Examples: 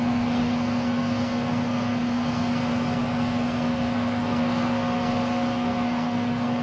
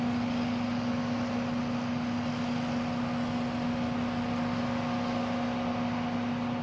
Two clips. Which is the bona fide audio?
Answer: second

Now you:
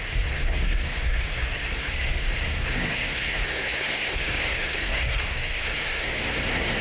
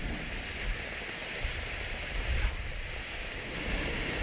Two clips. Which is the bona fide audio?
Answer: second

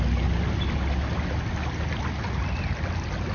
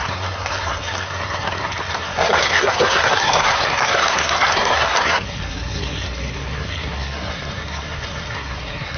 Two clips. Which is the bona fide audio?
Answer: first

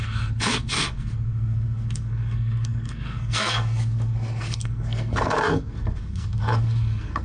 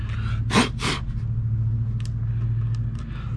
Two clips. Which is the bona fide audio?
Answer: second